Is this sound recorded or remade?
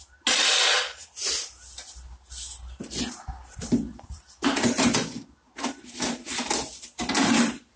recorded